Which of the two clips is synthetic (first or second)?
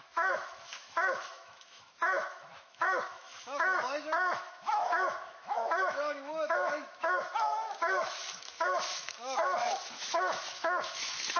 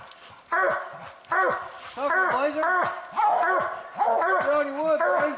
first